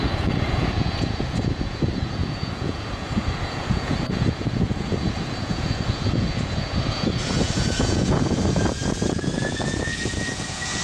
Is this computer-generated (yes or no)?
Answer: yes